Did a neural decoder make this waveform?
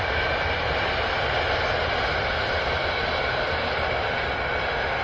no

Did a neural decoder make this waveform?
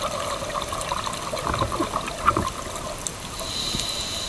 no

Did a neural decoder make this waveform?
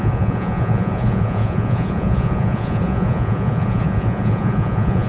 yes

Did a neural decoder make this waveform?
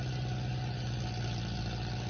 no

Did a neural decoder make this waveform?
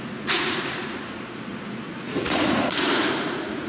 yes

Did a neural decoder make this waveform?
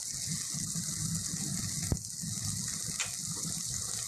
no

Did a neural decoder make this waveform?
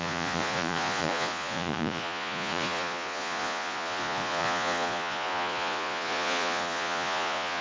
yes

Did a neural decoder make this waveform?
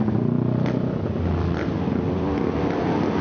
no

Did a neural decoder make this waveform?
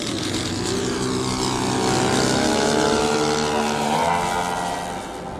no